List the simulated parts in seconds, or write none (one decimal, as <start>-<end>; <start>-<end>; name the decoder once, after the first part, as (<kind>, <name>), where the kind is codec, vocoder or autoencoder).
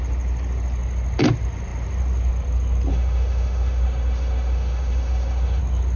2.9-5.6 (autoencoder, DAC-VAE)